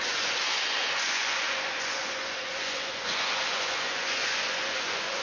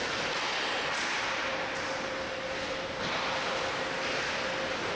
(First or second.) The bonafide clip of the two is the second